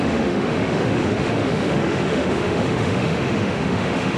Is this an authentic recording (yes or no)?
no